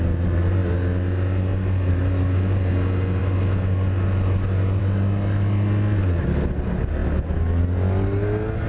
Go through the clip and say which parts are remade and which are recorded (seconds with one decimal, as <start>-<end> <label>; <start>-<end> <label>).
0.0-8.7 recorded